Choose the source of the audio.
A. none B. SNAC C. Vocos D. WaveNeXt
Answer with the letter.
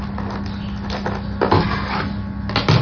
A